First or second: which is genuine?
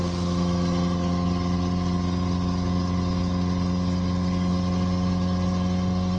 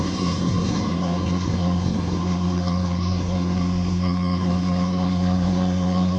first